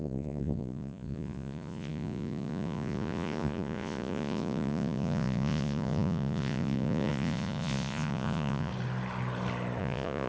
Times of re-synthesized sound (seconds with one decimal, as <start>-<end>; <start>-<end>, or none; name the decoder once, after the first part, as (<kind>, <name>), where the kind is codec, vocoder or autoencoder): 0.0-8.7 (vocoder, Vocos); 9.8-10.3